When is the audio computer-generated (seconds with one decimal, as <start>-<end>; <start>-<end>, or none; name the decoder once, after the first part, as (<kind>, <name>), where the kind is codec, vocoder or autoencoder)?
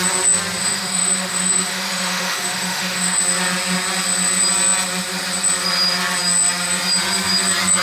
0.6-3.2 (autoencoder, DAC-VAE)